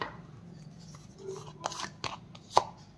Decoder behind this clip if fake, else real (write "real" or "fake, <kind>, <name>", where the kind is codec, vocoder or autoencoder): real